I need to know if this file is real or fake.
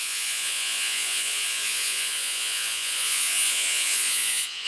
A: fake